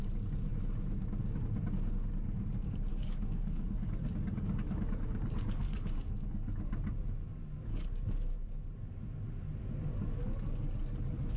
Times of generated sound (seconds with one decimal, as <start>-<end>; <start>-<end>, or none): 2.9-6.7; 7.7-8.7